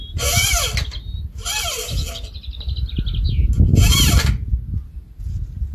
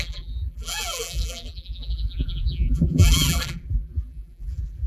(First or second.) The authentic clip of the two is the first